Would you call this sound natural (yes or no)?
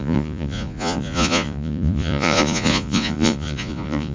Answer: no